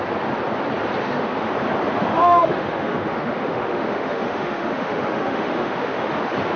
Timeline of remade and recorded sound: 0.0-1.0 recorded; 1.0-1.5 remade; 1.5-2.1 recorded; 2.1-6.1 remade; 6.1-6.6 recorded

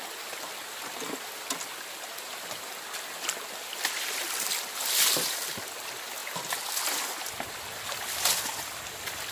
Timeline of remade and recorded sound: 0.0-9.3 recorded